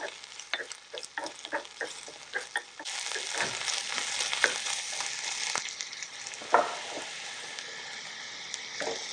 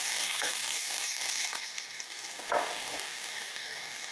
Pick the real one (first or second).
first